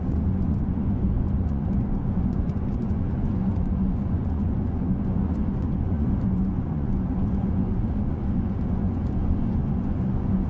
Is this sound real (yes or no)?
no